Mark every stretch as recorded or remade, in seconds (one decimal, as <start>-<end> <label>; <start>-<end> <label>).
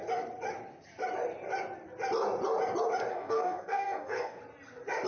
0.0-3.1 recorded; 3.1-4.4 remade; 4.4-5.1 recorded